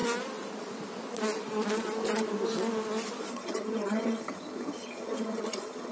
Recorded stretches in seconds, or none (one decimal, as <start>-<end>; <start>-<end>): 0.0-3.3